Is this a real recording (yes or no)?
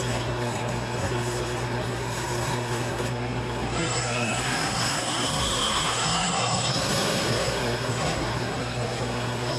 no